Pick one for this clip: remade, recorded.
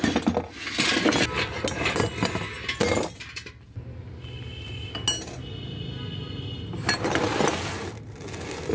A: recorded